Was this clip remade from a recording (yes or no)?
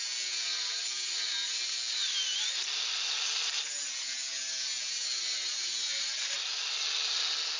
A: no